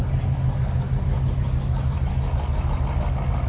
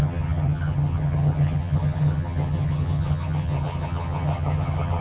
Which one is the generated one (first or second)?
second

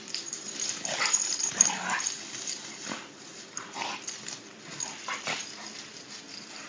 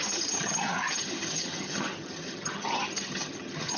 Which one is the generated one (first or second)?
second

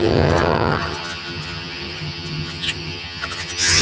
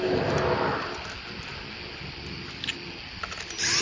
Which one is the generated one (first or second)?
first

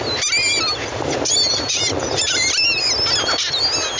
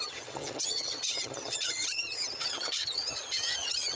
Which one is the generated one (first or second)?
second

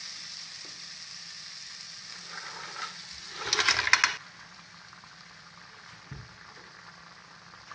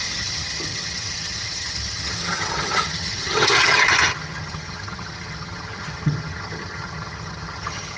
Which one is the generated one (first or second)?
second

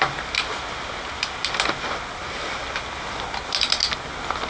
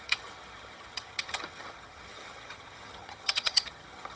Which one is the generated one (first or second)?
second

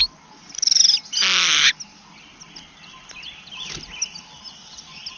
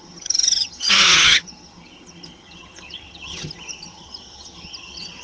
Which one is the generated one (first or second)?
second